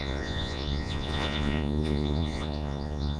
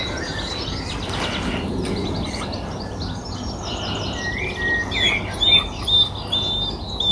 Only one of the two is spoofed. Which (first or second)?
first